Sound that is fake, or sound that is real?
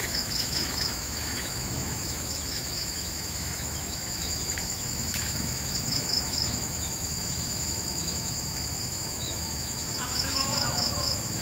fake